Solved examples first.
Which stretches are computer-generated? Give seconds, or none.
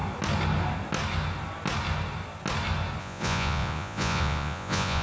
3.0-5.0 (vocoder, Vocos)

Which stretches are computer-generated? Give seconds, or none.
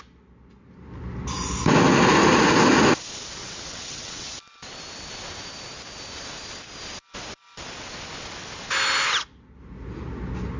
3.4-4.3 (vocoder, WaveNeXt)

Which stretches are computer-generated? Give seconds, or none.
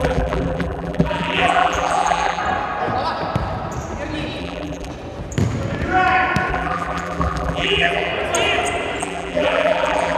0.0-2.4 (vocoder, BigVGAN v2); 4.4-4.9; 6.5-8.1; 9.0-10.2